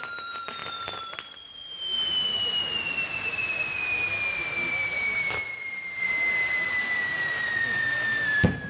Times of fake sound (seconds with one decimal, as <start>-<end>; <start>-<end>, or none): none